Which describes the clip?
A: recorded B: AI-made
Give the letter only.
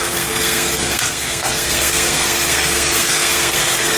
B